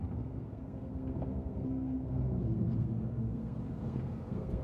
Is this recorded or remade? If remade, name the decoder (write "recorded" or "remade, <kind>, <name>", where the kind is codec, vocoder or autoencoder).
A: remade, codec, SNAC